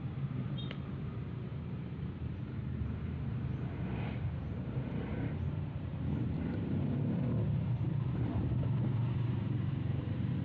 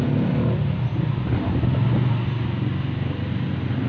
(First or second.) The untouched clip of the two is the second